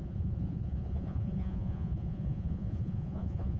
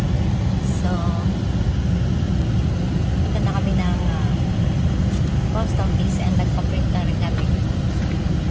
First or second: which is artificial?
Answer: first